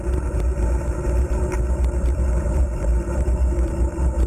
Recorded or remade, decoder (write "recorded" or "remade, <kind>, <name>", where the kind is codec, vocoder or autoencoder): remade, vocoder, BigVGAN v2